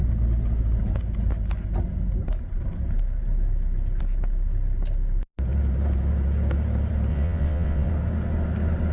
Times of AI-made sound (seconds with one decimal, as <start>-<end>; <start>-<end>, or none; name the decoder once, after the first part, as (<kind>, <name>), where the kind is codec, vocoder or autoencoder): 7.1-7.9 (vocoder, WaveNeXt)